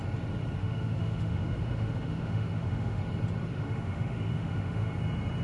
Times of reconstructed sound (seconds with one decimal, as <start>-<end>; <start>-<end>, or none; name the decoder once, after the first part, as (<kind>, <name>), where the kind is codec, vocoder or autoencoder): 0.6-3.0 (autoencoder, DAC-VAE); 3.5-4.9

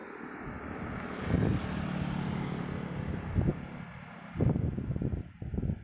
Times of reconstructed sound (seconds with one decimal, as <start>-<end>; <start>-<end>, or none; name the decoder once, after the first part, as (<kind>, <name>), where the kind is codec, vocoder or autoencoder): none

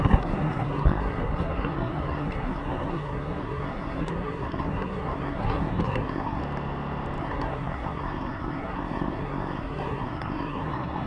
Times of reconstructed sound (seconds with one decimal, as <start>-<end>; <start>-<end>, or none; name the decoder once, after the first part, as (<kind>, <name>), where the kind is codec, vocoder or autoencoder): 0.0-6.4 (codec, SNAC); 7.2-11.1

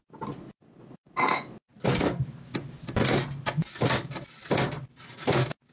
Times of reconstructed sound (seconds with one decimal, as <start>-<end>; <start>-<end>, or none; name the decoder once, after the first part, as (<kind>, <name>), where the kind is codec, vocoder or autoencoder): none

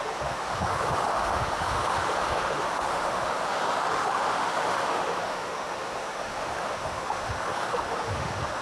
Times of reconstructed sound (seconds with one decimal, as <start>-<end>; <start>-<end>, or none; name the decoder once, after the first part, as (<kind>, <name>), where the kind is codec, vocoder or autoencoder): 0.0-8.6 (autoencoder, DAC-VAE)

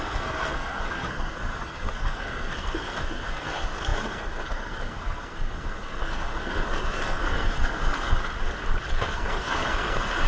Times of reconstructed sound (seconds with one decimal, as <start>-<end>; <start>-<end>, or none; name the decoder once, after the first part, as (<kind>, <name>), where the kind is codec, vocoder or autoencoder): 0.0-8.2 (codec, SNAC); 8.9-10.3